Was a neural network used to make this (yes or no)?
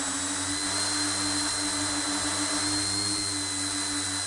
no